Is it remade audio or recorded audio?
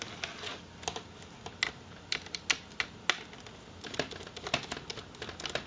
recorded